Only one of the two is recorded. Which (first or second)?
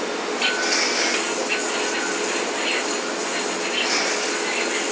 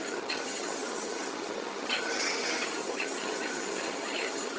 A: first